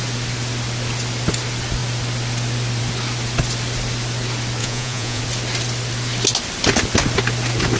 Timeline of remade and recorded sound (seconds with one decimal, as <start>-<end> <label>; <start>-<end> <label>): 0.0-4.6 recorded; 4.6-5.2 remade; 5.2-7.8 recorded